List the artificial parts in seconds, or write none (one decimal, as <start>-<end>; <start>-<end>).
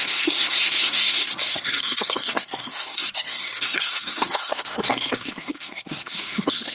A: 0.0-6.7